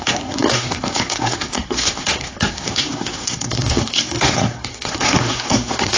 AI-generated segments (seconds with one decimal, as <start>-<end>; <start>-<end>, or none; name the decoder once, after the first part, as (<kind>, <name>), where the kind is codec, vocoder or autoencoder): 0.0-6.0 (codec, SNAC)